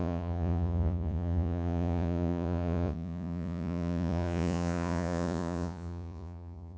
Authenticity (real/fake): fake